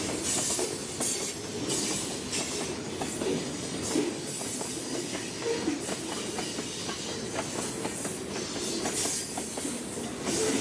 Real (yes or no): yes